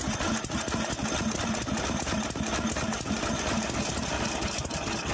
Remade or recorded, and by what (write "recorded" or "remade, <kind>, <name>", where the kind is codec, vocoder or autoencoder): recorded